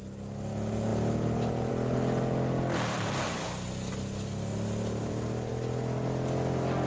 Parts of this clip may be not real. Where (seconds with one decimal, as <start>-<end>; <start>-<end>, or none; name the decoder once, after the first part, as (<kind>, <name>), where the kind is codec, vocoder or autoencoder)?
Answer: 2.9-3.9 (vocoder, BigVGAN v2); 5.0-5.5